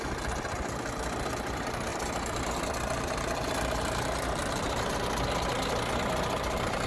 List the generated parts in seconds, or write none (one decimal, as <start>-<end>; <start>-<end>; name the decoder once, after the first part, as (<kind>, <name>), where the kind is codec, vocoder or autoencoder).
0.0-6.9 (vocoder, BigVGAN v2)